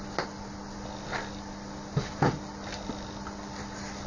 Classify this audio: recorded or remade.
recorded